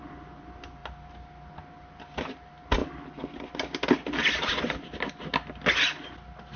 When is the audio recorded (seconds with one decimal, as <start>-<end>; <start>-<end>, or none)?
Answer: 0.0-6.6